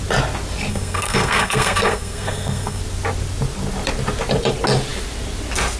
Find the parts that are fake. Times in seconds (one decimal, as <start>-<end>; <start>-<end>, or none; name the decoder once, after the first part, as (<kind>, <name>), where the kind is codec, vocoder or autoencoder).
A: 0.7-2.8 (codec, SNAC)